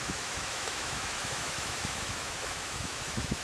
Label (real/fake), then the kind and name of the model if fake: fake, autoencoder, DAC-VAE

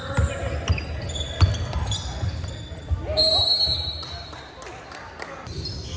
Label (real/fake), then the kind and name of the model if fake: real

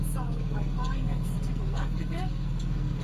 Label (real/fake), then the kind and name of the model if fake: fake, codec, SNAC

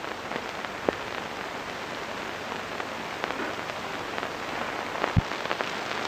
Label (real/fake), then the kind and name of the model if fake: real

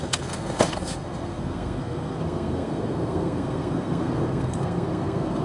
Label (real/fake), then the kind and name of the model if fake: fake, codec, SNAC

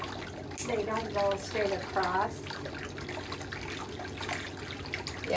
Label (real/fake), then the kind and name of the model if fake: real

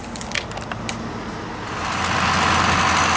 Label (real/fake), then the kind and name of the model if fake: real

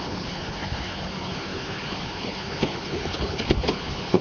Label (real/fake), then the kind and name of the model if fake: fake, codec, HILCodec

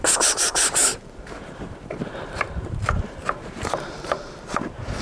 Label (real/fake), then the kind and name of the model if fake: fake, vocoder, BigVGAN v2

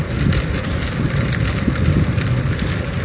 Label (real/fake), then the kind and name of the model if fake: real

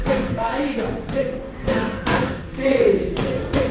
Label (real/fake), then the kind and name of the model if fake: fake, codec, SNAC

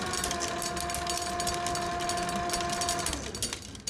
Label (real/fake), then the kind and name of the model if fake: real